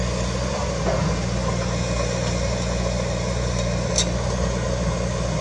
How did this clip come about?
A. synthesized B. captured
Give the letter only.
B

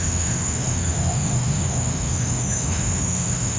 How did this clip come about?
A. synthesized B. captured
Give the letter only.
A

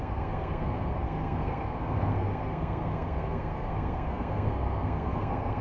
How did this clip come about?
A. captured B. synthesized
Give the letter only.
B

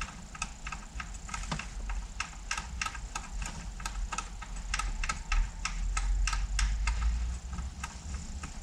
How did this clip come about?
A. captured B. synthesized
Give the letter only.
A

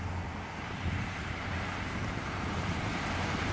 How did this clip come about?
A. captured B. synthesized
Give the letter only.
B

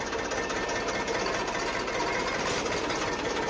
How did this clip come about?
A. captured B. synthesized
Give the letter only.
A